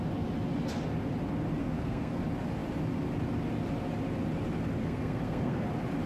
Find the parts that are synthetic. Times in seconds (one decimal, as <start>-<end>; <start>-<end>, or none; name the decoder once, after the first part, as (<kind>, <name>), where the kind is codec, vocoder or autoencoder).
1.6-2.2 (codec, SNAC); 4.8-5.6